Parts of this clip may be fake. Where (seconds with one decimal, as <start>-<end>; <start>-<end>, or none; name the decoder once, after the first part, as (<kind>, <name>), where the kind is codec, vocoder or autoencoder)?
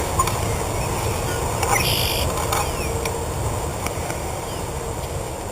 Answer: 3.7-4.6 (vocoder, BigVGAN v2)